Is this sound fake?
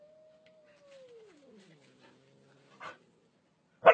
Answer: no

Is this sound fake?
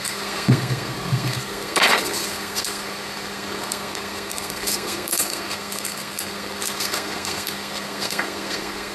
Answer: yes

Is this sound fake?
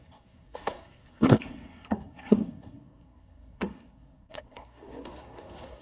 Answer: yes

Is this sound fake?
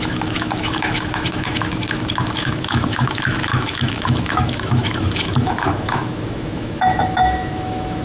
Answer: yes